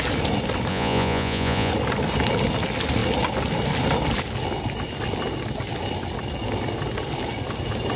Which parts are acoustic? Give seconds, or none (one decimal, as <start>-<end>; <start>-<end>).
0.0-0.7; 1.7-8.0